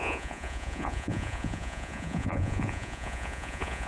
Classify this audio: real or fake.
fake